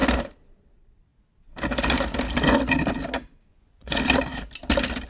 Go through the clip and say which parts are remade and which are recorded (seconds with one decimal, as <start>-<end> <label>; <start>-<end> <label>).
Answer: 0.0-3.5 recorded; 3.5-4.0 remade; 4.0-5.1 recorded